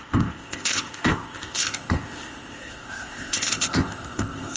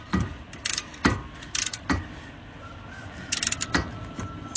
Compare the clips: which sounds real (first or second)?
second